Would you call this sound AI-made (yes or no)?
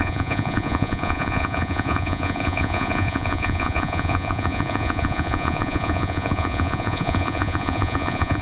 yes